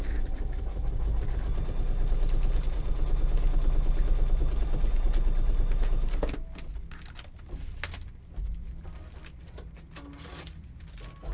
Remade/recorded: recorded